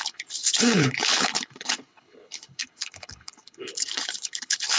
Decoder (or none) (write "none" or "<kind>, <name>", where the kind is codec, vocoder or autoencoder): codec, HILCodec